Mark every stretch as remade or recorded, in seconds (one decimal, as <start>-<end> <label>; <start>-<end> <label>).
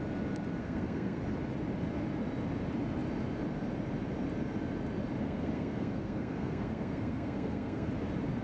0.0-0.6 recorded; 0.6-1.2 remade; 1.2-5.2 recorded; 5.2-7.9 remade; 7.9-8.4 recorded